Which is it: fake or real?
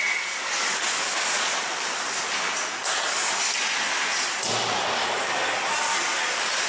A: real